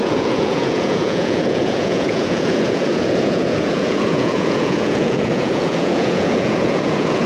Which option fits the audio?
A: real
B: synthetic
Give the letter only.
B